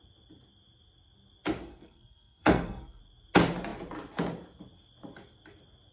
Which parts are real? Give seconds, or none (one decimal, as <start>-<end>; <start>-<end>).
0.0-1.7; 3.0-5.9